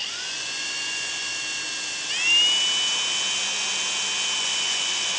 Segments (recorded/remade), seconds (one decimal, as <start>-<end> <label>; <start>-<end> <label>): 0.0-1.3 remade; 1.3-4.4 recorded; 4.4-5.2 remade